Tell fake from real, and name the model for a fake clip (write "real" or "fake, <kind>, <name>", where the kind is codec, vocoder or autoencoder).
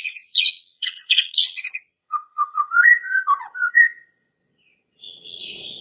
fake, vocoder, Vocos